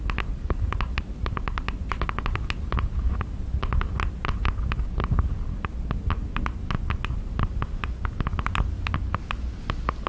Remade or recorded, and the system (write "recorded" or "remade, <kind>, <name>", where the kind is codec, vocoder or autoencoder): recorded